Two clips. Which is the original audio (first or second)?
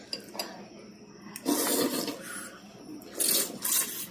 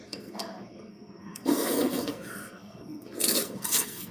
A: first